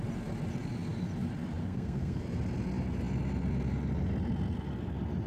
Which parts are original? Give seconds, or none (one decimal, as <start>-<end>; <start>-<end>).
0.0-1.6; 2.2-5.3